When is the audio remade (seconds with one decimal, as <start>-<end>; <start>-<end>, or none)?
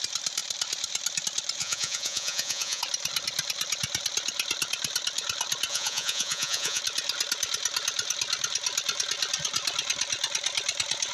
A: 1.6-2.8; 5.7-6.8